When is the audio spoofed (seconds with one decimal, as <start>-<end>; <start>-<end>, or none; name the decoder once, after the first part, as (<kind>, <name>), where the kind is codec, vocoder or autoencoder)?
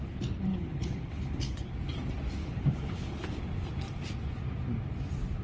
0.5-1.7 (codec, HILCodec); 2.4-3.4